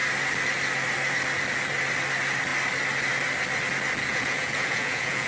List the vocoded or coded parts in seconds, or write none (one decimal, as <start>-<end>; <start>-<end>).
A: 4.1-5.3